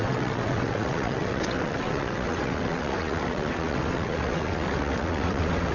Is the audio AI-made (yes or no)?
yes